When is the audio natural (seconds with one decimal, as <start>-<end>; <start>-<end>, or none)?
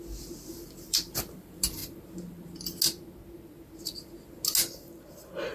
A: 1.8-5.1